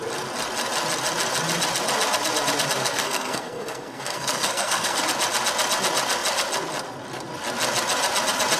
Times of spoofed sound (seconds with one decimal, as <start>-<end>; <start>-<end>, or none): 2.8-5.0